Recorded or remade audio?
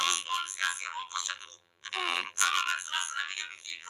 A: remade